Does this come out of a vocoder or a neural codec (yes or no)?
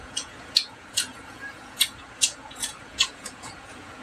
yes